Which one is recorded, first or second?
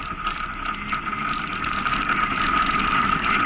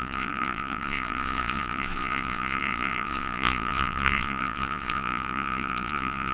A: first